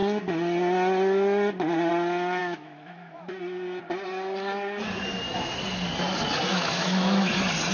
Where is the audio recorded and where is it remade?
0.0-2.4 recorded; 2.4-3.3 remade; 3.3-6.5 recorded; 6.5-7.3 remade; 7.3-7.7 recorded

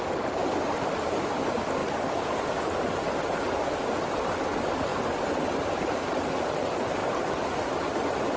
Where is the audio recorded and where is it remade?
0.0-8.4 recorded

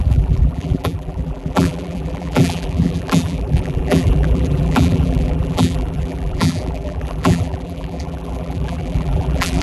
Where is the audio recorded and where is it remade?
0.0-9.6 remade

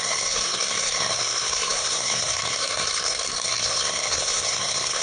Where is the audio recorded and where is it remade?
0.0-5.0 remade

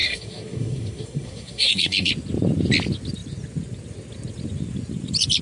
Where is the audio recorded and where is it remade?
0.0-2.1 remade; 2.1-5.4 recorded